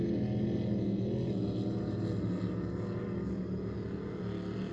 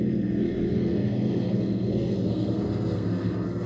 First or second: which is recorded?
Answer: first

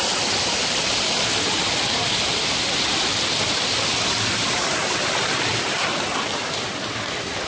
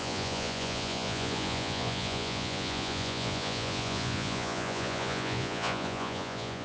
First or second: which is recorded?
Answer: first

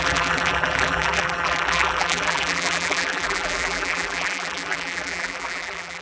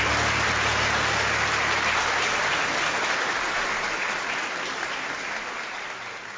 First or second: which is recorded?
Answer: second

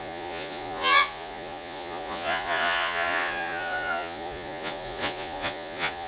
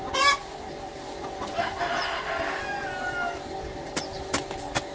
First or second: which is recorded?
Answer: second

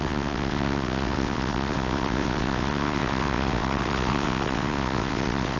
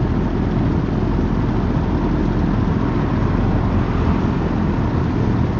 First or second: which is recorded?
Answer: second